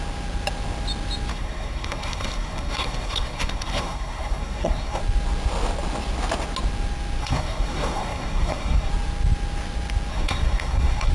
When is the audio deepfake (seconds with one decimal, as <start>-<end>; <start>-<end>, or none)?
1.3-5.0; 7.2-8.9; 10.1-11.1

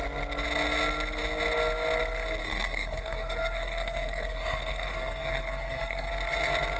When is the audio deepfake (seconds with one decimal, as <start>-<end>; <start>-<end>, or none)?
2.4-6.1